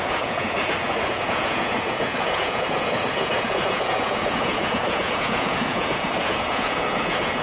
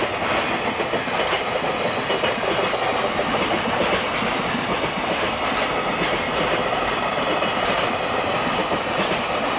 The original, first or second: second